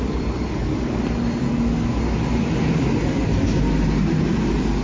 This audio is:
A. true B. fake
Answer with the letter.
A